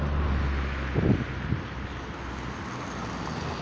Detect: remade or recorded recorded